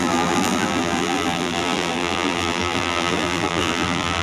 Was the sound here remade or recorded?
remade